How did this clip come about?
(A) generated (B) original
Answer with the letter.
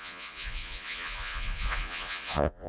A